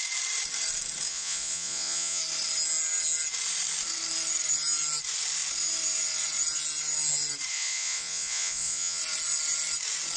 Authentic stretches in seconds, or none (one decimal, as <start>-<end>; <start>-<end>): 0.0-1.1; 2.2-7.5; 9.0-10.2